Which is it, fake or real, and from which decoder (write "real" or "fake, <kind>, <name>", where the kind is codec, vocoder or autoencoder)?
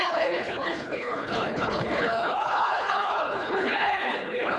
fake, codec, HILCodec